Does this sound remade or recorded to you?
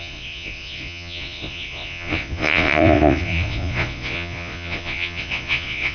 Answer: remade